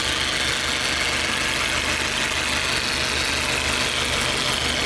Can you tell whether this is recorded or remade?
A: recorded